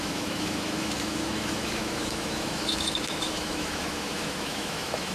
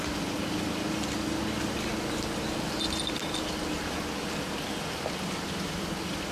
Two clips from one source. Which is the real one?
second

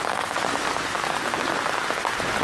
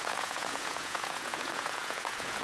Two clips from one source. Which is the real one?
first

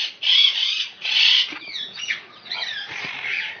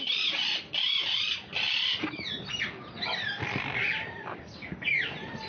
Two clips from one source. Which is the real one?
second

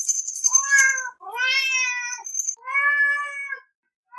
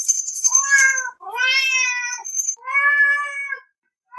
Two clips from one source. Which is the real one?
first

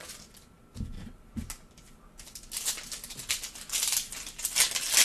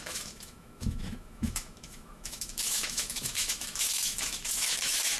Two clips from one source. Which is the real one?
first